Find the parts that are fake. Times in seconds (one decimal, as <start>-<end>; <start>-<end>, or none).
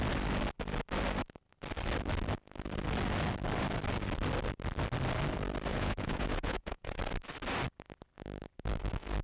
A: 5.7-7.0